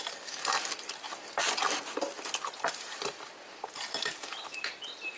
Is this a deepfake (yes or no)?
no